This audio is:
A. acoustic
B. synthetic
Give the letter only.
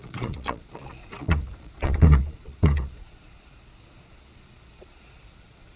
B